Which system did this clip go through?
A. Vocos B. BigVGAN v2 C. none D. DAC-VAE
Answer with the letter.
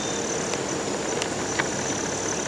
C